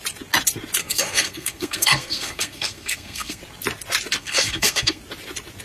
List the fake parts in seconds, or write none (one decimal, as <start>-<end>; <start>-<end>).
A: 0.8-3.4; 4.2-5.0